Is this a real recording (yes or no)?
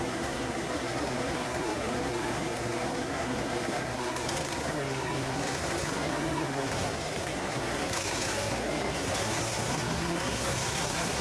no